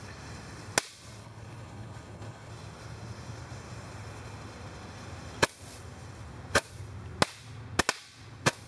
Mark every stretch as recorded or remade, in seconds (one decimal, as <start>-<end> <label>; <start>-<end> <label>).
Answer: 0.0-1.2 recorded; 1.2-2.5 remade; 2.5-8.7 recorded